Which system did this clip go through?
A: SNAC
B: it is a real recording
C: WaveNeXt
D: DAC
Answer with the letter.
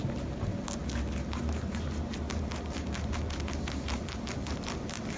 B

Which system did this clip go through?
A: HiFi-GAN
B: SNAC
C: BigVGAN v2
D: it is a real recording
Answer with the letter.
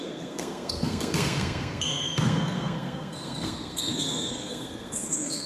B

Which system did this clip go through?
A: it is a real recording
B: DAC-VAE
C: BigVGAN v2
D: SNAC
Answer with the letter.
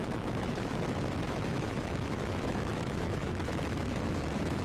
B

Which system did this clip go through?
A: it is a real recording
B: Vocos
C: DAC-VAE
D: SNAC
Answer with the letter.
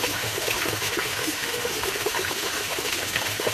C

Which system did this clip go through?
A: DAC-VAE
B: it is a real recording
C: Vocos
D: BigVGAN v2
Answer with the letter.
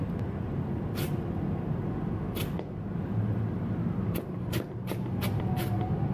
B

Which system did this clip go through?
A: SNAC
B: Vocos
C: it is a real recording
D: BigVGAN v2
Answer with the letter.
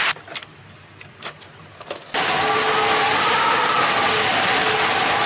C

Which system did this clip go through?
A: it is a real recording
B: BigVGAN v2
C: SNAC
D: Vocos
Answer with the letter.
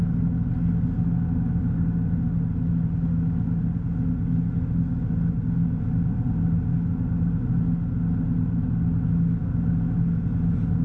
A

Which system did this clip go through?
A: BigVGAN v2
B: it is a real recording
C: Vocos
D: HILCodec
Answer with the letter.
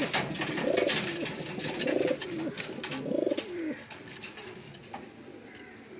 B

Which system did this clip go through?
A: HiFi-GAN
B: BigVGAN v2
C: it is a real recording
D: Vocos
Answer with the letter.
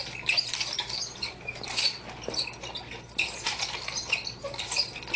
C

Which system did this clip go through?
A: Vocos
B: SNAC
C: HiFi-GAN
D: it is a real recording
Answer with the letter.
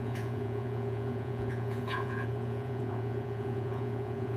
A